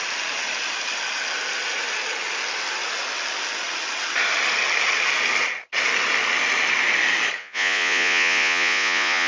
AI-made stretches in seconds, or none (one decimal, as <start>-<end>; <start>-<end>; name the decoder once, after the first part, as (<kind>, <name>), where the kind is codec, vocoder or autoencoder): 7.4-9.3 (vocoder, Vocos)

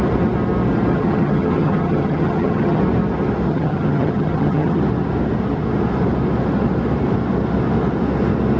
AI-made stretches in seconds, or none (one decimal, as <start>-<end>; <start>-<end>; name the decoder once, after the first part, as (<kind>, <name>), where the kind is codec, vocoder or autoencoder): 0.9-2.8 (vocoder, HiFi-GAN); 3.5-4.8

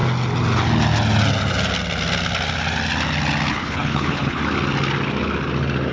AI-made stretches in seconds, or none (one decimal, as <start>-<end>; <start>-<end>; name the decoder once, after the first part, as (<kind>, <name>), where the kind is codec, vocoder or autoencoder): 3.5-4.4 (codec, HILCodec)